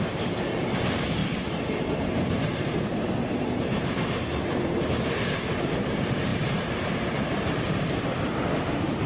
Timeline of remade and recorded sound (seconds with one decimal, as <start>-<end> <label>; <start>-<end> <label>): 0.0-1.2 remade; 1.2-2.0 recorded; 2.0-9.1 remade